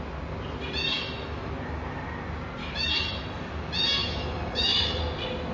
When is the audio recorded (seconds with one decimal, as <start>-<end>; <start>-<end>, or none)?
0.0-0.9; 1.5-2.6; 3.2-4.0; 5.0-5.5